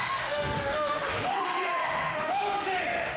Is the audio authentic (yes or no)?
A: no